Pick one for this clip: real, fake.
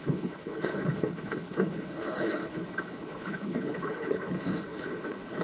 fake